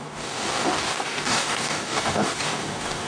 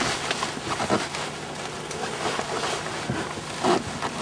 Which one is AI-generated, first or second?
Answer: first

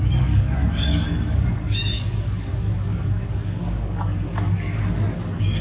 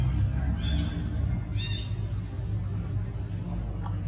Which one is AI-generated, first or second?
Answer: first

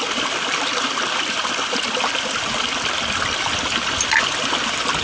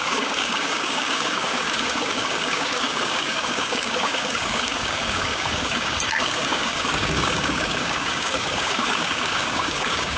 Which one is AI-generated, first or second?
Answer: second